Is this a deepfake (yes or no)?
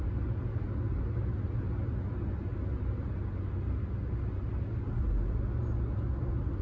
no